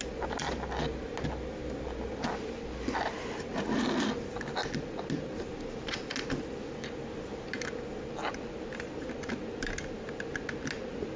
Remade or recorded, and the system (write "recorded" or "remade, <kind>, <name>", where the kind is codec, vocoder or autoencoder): recorded